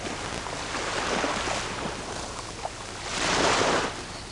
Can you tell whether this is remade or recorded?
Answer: recorded